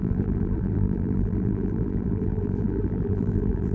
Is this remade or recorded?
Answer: remade